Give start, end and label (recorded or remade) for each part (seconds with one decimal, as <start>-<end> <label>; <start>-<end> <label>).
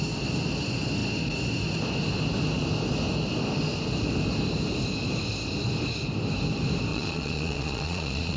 0.0-6.9 recorded; 6.9-8.4 remade